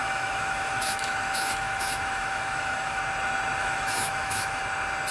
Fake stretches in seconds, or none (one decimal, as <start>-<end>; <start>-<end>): 0.0-3.0; 3.6-4.6